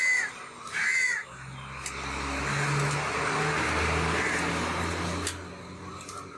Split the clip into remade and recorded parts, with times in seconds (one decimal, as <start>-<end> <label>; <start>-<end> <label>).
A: 0.0-6.4 recorded